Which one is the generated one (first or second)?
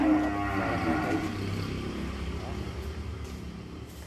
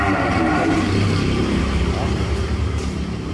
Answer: second